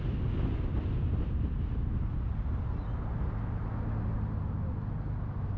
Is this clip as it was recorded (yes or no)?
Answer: yes